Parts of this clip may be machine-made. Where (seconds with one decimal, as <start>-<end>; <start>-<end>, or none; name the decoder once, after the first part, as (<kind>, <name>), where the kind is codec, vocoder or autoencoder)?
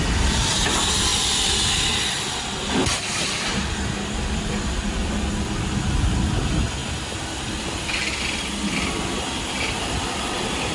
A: 1.1-2.9 (vocoder, BigVGAN v2); 6.8-8.5